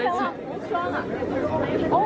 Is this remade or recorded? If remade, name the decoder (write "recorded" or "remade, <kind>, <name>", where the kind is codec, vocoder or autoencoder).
recorded